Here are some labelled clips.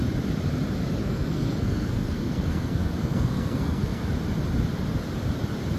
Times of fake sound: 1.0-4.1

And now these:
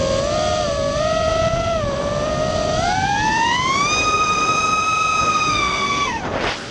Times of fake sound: 5.3-6.2